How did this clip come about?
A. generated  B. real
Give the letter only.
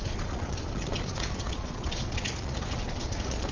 A